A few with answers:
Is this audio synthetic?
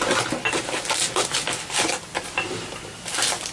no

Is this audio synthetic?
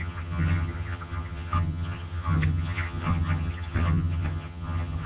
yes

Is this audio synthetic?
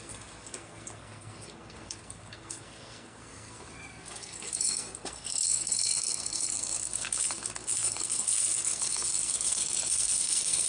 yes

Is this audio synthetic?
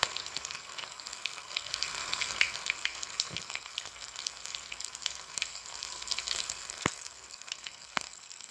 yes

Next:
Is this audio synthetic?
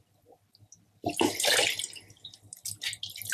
no